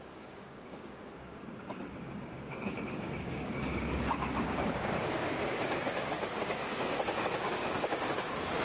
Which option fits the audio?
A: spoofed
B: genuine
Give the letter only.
A